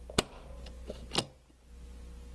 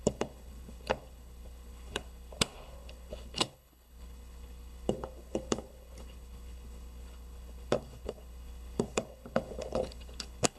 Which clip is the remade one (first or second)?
second